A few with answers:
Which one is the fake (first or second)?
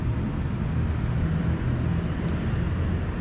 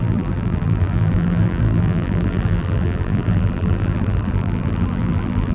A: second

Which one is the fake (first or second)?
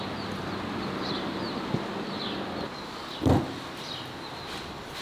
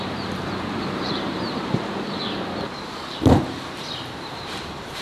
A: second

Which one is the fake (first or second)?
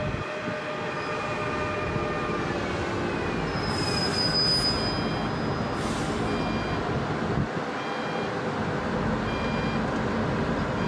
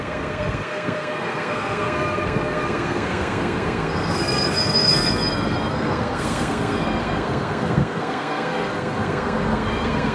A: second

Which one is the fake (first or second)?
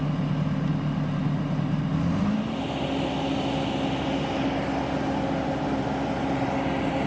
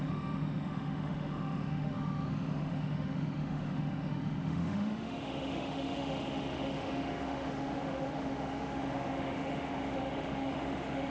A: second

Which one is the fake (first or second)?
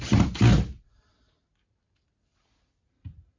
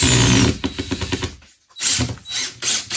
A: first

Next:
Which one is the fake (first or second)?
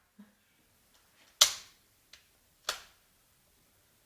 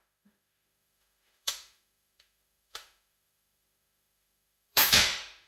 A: second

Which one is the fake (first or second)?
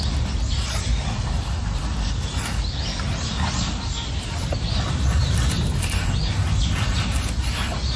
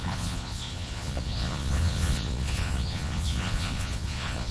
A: second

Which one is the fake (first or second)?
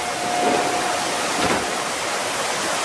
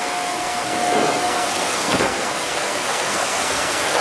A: second